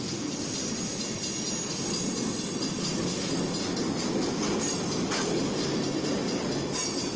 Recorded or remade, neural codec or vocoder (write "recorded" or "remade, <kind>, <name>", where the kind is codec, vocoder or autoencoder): recorded